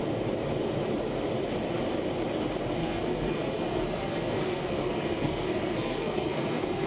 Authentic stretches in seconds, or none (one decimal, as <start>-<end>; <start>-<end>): 0.0-2.8

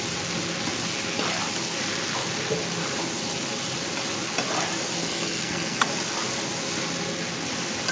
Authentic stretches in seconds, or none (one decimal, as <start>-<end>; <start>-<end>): 0.0-5.0; 5.9-7.9

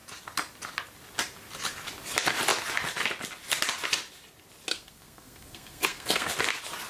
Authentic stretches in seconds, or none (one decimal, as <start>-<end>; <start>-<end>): 0.0-4.7; 6.3-6.9

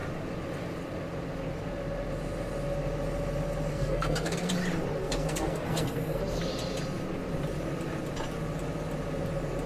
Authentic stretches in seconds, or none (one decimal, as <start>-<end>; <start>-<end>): 0.0-3.7; 4.5-5.0; 6.4-9.7

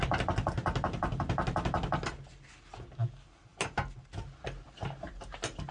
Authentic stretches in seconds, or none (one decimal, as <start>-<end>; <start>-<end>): 0.0-5.7

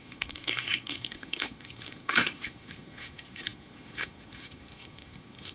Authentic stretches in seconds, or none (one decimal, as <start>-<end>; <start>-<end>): none

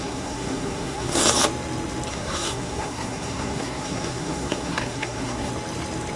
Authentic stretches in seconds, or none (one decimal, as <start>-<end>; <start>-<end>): 1.2-2.1; 5.5-6.2